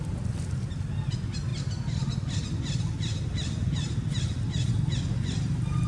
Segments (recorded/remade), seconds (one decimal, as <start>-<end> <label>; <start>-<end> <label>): 0.0-5.9 recorded